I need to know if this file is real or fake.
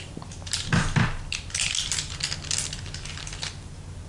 real